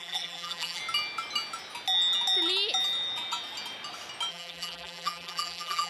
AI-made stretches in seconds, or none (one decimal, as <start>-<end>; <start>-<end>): 0.0-0.8; 4.3-5.9

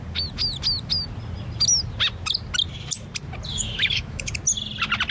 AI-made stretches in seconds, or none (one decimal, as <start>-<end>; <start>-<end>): 3.5-4.3

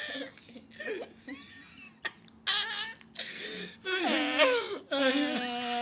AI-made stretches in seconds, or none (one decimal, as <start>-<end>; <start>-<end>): 3.3-4.0

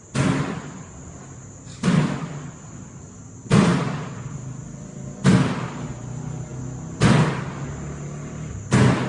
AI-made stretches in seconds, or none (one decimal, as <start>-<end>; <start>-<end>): none

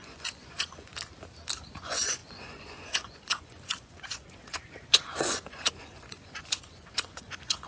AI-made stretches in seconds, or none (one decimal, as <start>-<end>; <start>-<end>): 0.0-0.9; 1.7-7.7